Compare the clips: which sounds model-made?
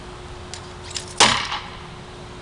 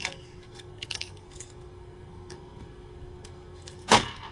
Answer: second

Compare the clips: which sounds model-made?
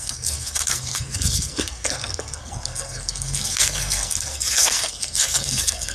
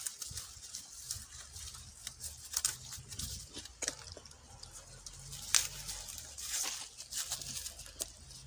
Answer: first